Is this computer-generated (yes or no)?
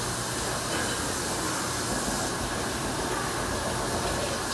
no